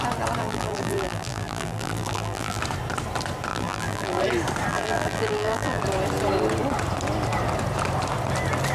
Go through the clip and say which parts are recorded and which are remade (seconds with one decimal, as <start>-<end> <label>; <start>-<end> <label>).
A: 0.0-0.4 recorded; 0.4-2.6 remade; 2.6-3.5 recorded; 3.5-4.2 remade; 4.2-4.7 recorded; 4.7-5.8 remade; 5.8-8.7 recorded